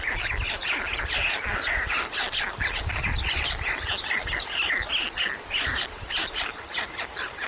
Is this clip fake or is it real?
real